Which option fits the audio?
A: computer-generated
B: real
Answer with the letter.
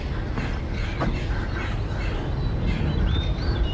B